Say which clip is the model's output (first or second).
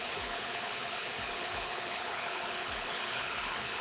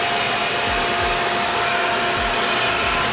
first